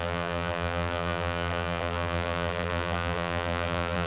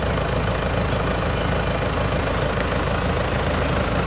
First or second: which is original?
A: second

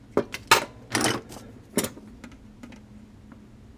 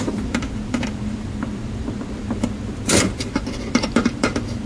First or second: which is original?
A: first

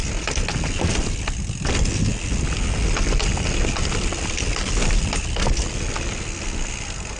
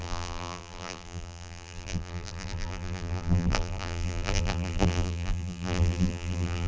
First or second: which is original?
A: first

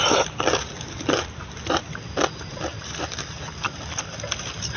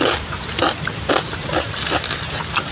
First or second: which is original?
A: second